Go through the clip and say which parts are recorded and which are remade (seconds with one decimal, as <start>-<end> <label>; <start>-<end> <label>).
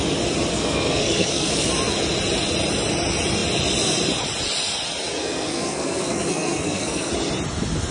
0.0-0.5 recorded; 0.5-1.7 remade; 1.7-5.2 recorded; 5.2-7.1 remade; 7.1-7.9 recorded